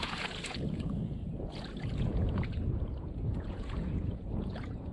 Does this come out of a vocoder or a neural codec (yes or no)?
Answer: yes